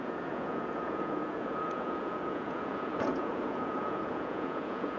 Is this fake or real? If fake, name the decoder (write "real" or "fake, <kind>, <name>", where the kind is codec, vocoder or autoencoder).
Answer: fake, vocoder, Vocos